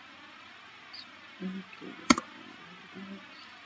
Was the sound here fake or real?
fake